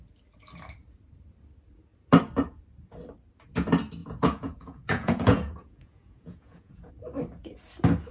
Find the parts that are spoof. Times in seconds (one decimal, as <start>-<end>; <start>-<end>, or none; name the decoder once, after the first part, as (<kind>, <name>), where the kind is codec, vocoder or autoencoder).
4.0-6.9 (vocoder, Vocos)